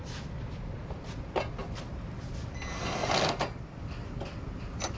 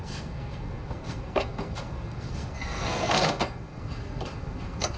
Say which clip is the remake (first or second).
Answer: second